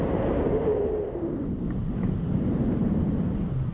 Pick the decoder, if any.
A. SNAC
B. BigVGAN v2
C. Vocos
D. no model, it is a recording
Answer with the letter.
D